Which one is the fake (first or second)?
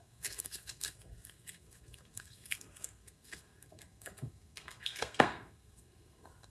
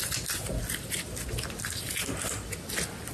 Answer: first